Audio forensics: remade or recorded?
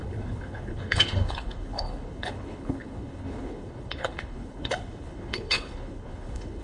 remade